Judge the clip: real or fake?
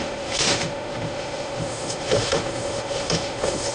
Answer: fake